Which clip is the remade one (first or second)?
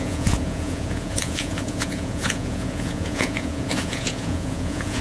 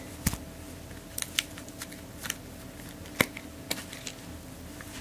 first